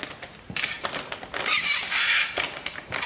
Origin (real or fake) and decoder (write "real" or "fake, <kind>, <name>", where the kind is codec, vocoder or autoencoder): real